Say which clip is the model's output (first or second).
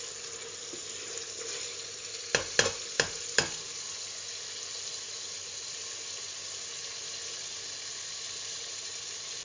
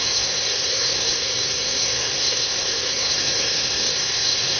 second